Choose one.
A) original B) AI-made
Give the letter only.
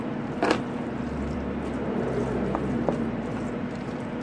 B